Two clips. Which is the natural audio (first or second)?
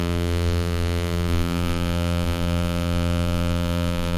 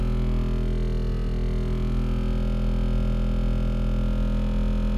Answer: second